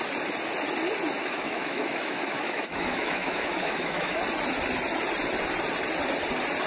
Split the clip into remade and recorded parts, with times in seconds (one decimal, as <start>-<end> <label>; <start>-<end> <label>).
0.0-1.2 recorded; 1.2-4.2 remade; 4.2-6.7 recorded